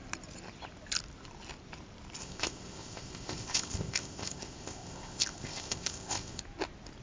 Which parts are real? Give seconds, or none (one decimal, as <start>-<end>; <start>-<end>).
0.0-2.2; 6.4-7.0